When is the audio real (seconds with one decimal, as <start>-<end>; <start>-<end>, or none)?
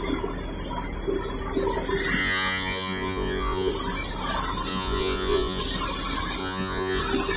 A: 0.0-2.2; 3.7-4.7; 5.6-6.4; 7.0-7.4